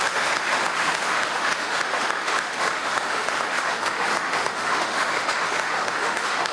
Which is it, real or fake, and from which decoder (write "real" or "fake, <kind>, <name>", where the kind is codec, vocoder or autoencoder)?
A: fake, autoencoder, DAC-VAE